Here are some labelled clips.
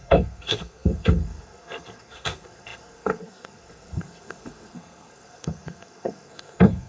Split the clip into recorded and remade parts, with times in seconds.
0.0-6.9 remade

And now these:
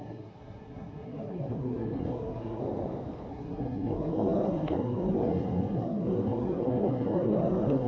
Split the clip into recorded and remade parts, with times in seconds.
0.0-2.6 remade; 2.6-3.3 recorded; 3.3-7.9 remade

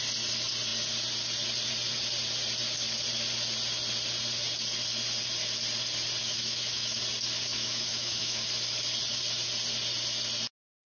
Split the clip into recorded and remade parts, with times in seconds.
0.0-6.2 recorded; 6.2-7.0 remade; 7.0-7.5 recorded; 7.5-8.4 remade; 8.4-10.9 recorded

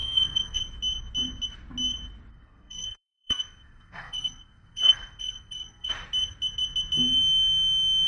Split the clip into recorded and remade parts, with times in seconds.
0.0-0.6 remade; 0.6-2.3 recorded; 2.3-5.9 remade; 5.9-8.1 recorded

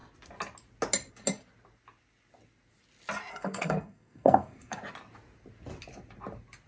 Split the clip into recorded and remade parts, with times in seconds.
0.0-3.3 recorded; 3.3-4.8 remade; 4.8-6.7 recorded

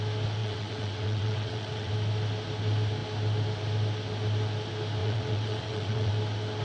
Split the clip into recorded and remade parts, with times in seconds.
0.0-0.4 recorded; 0.4-1.9 remade; 1.9-5.0 recorded; 5.0-6.1 remade; 6.1-6.6 recorded

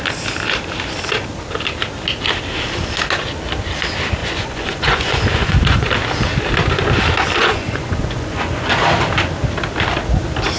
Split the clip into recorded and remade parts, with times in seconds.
0.0-4.2 recorded; 4.2-5.9 remade; 5.9-7.4 recorded; 7.4-8.8 remade; 8.8-10.6 recorded